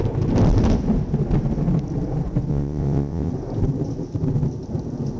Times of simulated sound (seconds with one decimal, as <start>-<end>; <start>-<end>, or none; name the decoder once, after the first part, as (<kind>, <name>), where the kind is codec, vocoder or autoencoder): 2.5-3.3 (vocoder, WaveNeXt)